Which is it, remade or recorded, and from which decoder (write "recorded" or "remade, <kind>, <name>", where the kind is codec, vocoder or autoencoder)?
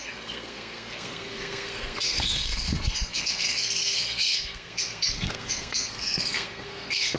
remade, codec, SNAC